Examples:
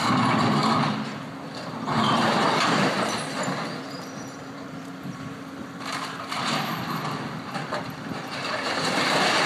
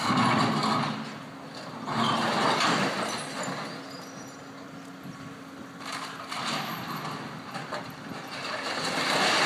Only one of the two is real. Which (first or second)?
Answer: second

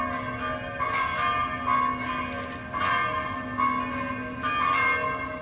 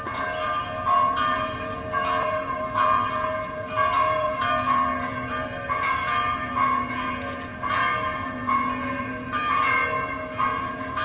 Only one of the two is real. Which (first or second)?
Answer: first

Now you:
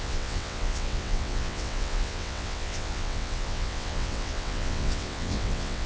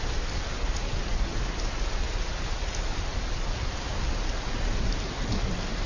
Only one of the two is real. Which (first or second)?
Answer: second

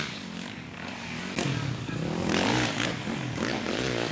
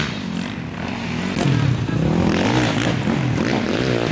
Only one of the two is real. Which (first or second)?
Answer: second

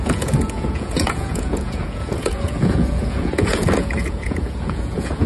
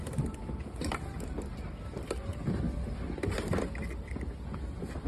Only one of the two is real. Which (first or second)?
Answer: second